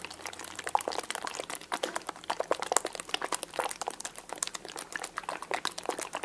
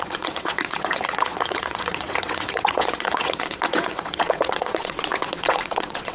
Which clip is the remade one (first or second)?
second